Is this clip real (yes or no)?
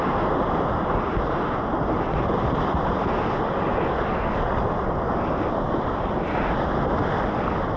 yes